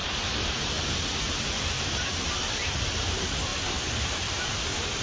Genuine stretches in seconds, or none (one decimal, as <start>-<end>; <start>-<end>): none